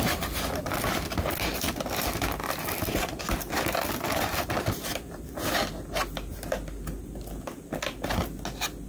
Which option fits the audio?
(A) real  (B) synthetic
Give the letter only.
A